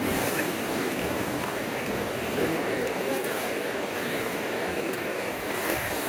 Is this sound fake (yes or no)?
yes